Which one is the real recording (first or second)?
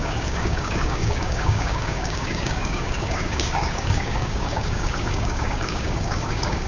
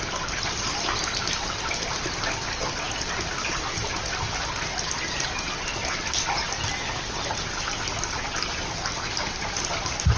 second